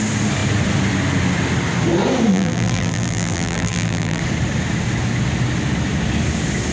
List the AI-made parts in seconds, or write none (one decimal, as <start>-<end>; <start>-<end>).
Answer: 2.3-4.2